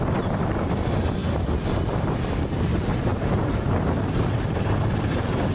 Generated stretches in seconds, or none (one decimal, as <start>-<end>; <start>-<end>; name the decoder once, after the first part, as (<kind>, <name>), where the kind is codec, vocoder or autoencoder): none